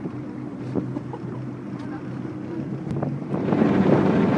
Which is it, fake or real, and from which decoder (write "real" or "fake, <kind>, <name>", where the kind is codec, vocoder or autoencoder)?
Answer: real